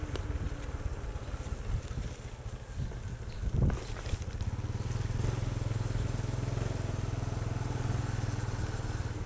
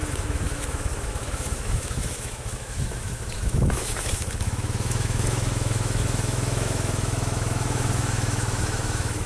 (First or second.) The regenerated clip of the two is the second